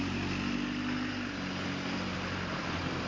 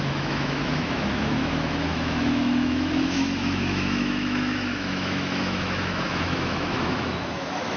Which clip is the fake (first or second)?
second